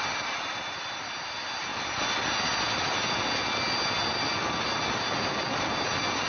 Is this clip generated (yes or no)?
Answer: no